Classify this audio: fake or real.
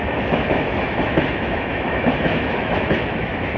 fake